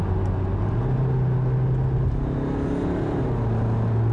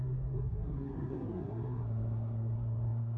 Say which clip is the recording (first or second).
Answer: first